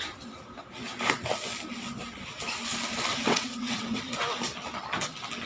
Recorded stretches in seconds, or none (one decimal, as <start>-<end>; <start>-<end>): 0.0-3.1; 4.0-5.5